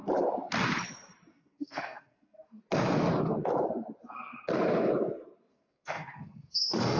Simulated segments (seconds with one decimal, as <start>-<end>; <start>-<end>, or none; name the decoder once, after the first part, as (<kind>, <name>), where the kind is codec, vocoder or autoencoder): 1.3-2.6 (codec, SNAC); 5.5-7.0